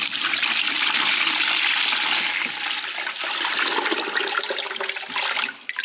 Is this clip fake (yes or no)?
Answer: no